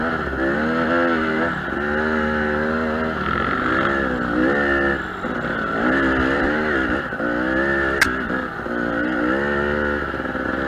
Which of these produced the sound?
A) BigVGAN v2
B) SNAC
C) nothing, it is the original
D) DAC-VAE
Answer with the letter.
C